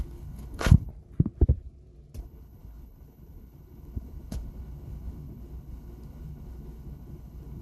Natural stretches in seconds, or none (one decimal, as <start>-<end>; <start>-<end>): 0.9-2.2